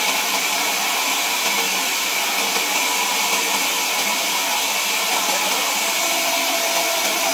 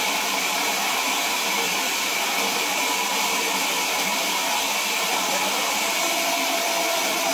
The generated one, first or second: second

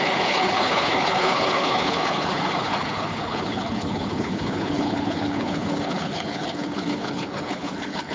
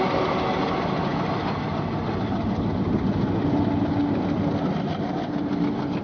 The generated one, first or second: first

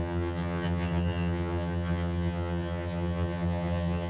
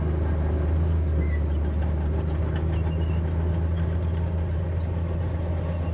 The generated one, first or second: first